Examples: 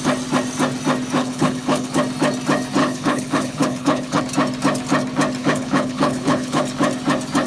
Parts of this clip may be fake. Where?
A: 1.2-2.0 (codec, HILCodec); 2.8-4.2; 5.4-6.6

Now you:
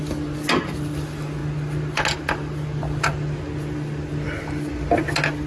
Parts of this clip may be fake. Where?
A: none

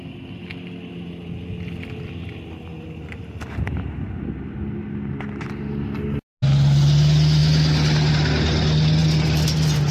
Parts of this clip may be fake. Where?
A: none

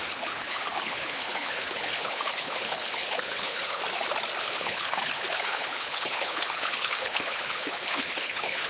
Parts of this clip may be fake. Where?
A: 0.0-3.8 (codec, HILCodec); 4.4-8.7

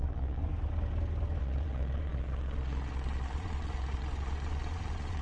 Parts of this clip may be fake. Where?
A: 0.0-0.4 (vocoder, Vocos); 1.4-5.2

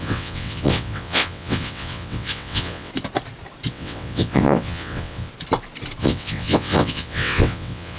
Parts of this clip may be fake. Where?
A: 0.0-2.9 (vocoder, WaveNeXt); 3.7-5.3; 6.0-8.0

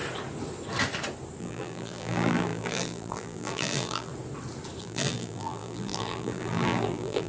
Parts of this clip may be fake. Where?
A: 1.4-4.1 (vocoder, BigVGAN v2); 4.8-7.3